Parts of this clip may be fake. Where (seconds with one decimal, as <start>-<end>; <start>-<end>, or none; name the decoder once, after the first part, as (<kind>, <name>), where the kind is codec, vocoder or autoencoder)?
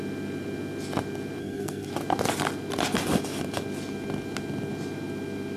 1.4-1.9 (codec, SNAC)